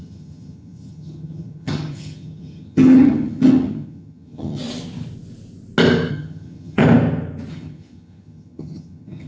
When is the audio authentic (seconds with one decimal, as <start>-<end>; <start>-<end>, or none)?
4.6-6.1; 6.8-7.5

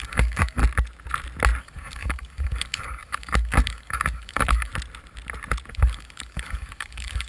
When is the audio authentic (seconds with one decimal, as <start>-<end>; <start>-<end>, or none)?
0.6-1.6; 4.7-5.7

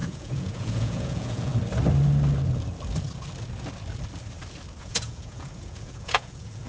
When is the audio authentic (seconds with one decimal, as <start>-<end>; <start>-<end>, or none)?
1.5-4.8

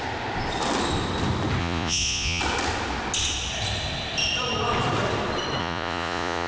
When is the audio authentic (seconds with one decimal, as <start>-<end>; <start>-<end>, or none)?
0.0-1.6; 2.4-5.6

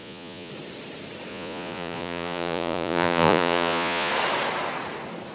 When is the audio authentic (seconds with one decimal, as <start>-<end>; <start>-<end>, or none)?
0.5-1.3; 4.1-5.3

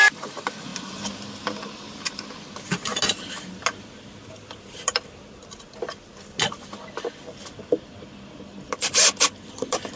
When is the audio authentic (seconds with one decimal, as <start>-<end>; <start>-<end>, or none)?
0.0-10.0

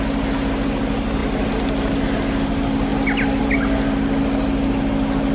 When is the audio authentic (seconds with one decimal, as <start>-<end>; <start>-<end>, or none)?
0.0-5.3